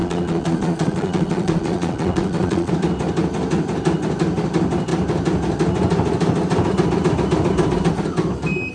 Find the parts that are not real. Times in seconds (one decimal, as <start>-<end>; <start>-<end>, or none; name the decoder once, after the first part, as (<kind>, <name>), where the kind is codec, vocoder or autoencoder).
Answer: 0.0-2.7 (vocoder, Vocos)